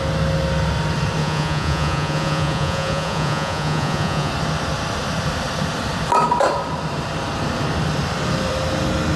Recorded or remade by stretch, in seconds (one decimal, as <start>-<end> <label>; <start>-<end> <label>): 0.0-1.2 recorded; 1.2-4.3 remade; 4.3-9.2 recorded